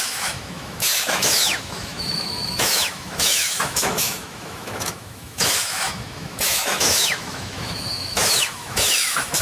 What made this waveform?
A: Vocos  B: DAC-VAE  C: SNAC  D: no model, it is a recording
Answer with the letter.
B